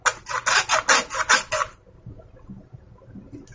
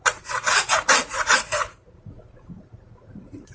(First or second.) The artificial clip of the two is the second